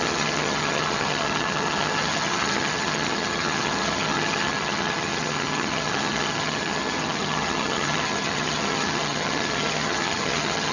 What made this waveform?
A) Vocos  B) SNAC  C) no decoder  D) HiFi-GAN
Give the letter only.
D